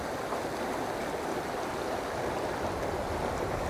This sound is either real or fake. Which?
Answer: real